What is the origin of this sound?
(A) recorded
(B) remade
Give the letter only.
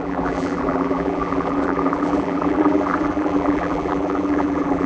B